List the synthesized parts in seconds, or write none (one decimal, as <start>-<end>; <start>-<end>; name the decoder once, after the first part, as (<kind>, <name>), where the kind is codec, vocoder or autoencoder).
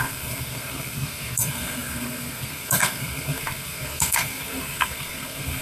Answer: 0.0-5.6 (codec, SNAC)